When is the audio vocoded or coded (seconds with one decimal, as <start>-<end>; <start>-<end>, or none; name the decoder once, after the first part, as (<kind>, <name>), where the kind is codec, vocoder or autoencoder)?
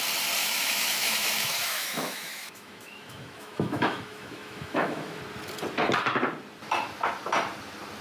0.4-5.2 (autoencoder, DAC-VAE)